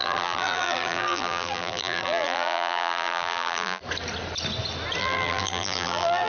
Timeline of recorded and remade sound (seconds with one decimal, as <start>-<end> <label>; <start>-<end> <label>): 0.0-3.8 remade; 3.8-5.0 recorded; 5.0-6.3 remade

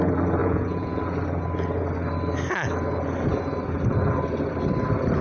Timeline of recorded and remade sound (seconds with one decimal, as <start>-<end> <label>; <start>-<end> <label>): 0.0-0.4 recorded; 0.4-1.0 remade; 1.0-5.2 recorded

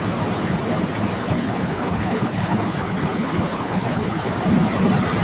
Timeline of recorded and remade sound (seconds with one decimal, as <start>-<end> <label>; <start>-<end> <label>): 0.0-1.2 recorded; 1.2-4.3 remade; 4.3-5.2 recorded

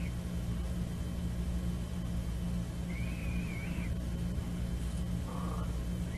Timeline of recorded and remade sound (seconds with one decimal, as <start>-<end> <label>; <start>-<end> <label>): 0.0-3.2 recorded; 3.2-4.4 remade; 4.4-6.2 recorded

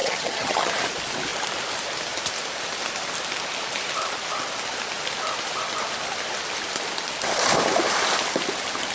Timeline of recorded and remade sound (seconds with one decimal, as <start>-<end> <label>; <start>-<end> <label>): 0.0-0.7 remade; 0.7-8.9 recorded

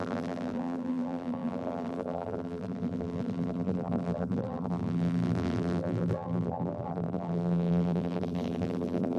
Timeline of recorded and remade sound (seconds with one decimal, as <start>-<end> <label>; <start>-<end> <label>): 0.0-9.2 remade

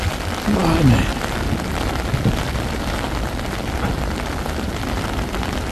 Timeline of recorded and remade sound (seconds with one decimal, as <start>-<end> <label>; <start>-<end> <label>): 0.0-5.7 recorded